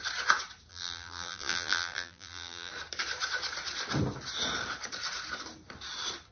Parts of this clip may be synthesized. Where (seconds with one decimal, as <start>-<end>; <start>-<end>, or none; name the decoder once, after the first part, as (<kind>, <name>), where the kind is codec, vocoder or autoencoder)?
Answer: 0.7-2.7 (vocoder, BigVGAN v2)